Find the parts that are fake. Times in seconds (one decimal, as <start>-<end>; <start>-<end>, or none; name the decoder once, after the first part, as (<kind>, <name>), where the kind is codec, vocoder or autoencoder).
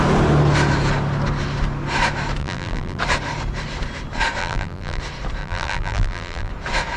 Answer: 2.4-3.0 (vocoder, BigVGAN v2); 4.4-5.0; 5.4-6.5